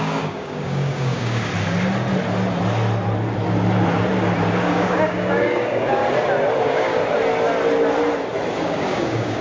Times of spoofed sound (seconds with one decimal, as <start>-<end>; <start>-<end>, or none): 0.0-1.5; 4.6-6.0; 6.6-7.0; 8.5-9.4